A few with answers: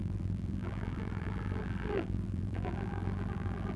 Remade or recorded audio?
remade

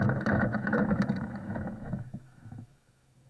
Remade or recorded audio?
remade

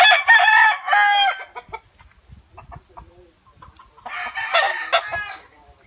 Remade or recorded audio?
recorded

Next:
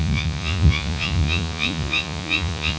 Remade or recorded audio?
remade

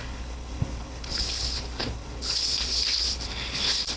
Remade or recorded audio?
remade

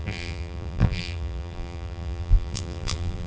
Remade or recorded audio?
remade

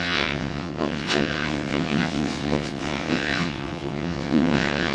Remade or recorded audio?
remade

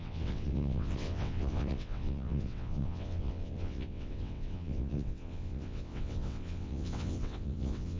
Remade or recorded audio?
remade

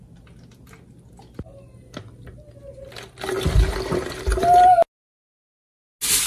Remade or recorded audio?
recorded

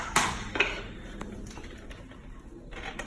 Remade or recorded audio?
recorded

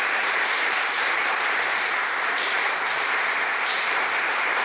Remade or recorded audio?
remade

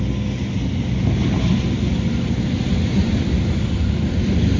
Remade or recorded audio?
recorded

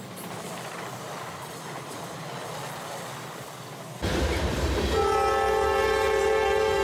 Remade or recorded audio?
recorded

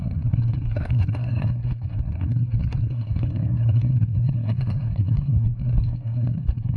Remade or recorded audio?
remade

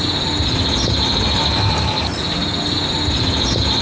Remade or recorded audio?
recorded